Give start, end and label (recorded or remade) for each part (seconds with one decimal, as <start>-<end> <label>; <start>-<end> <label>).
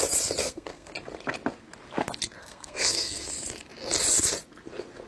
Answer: 0.0-0.4 recorded; 0.4-0.9 remade; 0.9-2.4 recorded; 2.4-3.3 remade; 3.3-5.1 recorded